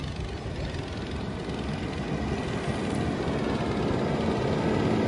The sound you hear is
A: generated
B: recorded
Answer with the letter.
B